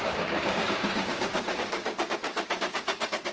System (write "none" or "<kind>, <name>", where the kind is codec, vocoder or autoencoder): codec, DAC